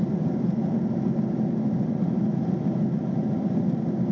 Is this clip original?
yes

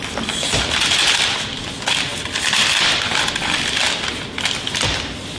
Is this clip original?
yes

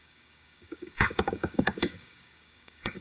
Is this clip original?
no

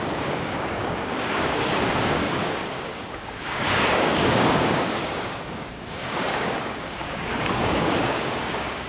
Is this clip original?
no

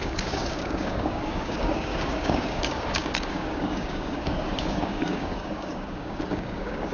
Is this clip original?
no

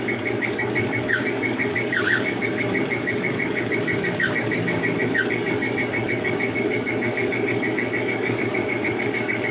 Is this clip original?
no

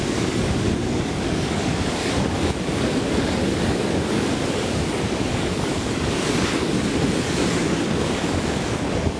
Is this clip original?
no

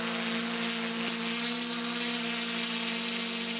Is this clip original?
yes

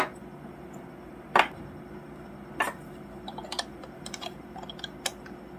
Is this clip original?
yes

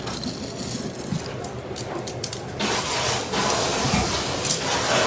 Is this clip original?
yes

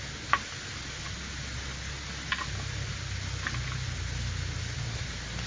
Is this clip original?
yes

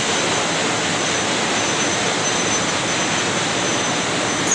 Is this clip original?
yes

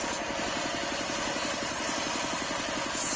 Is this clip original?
yes